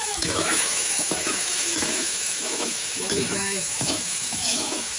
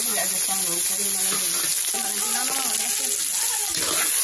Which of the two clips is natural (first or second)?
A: second